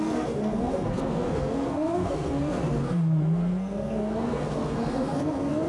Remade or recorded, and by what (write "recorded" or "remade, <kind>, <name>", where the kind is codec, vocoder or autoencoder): remade, codec, SNAC